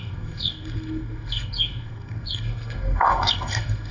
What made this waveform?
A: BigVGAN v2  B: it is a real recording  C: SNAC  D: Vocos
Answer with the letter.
C